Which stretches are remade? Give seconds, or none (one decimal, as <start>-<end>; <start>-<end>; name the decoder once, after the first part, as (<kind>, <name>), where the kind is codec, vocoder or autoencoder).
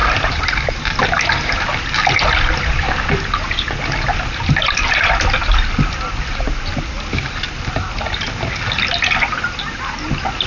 none